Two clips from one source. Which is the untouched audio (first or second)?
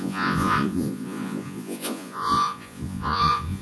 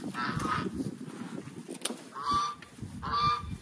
second